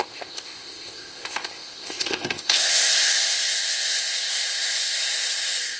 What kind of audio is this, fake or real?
fake